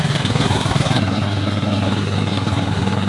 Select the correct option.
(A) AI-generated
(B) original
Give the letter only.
A